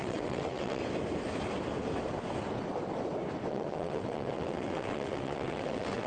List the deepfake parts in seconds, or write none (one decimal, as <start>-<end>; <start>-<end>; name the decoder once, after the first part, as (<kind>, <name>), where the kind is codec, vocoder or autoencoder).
0.0-0.8 (vocoder, WaveNeXt); 3.5-6.1